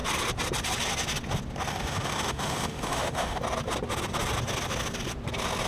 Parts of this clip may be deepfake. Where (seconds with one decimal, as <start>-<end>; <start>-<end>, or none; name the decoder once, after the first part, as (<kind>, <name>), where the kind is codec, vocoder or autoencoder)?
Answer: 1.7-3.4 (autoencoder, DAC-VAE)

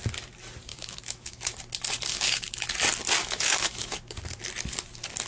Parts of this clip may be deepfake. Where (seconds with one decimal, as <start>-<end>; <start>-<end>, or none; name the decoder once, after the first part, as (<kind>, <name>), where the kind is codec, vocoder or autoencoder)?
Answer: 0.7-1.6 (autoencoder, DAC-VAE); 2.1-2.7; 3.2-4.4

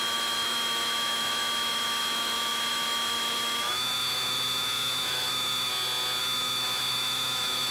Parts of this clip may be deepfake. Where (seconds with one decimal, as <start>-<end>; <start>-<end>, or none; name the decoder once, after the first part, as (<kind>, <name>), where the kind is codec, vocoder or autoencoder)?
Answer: 0.0-5.7 (autoencoder, DAC-VAE); 6.2-7.7

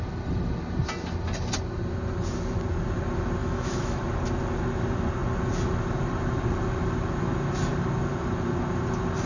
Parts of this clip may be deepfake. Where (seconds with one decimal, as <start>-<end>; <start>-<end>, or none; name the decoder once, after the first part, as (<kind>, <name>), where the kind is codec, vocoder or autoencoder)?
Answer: 3.4-4.0 (autoencoder, DAC-VAE)

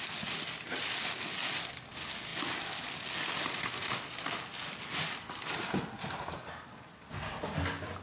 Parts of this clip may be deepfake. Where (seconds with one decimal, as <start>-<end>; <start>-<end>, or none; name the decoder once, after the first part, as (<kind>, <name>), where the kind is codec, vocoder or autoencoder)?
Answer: none

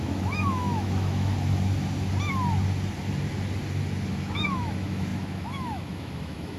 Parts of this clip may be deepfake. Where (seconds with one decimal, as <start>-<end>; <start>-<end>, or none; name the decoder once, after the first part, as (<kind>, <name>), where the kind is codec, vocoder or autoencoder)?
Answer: 0.0-1.3 (autoencoder, DAC-VAE); 4.1-6.6

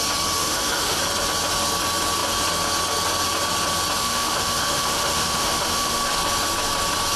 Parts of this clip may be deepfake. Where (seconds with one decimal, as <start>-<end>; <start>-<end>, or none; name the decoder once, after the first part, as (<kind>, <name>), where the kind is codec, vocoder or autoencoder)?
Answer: 0.4-1.0 (autoencoder, DAC-VAE); 4.0-6.2

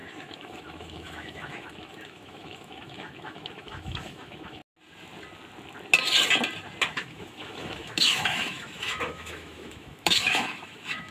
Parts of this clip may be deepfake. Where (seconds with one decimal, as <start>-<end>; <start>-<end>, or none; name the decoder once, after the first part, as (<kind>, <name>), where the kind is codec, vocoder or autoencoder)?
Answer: 0.0-4.6 (autoencoder, DAC-VAE); 6.9-11.1